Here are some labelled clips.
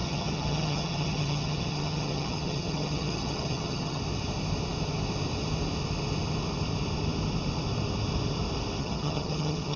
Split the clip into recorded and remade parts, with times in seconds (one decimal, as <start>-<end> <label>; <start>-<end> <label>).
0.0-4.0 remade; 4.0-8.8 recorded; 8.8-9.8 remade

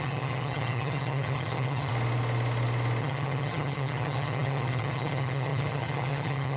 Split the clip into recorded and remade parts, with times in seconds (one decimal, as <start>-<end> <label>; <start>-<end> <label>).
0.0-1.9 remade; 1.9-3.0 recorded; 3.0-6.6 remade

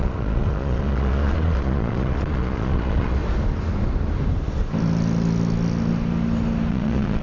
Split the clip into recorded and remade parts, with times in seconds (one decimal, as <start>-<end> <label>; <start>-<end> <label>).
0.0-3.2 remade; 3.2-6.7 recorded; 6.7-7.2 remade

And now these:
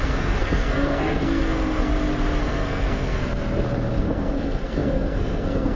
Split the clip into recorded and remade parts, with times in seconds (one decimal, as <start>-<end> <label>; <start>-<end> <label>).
0.0-1.9 remade; 1.9-2.4 recorded; 2.4-3.2 remade; 3.2-4.0 recorded; 4.0-5.8 remade

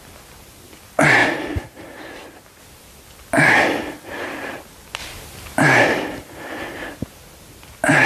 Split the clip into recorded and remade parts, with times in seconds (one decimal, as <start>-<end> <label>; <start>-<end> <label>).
0.0-1.2 recorded; 1.2-2.6 remade; 2.6-8.1 recorded

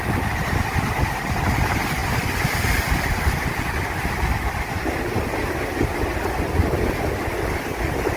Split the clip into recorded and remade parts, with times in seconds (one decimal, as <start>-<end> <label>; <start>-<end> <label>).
0.0-8.2 recorded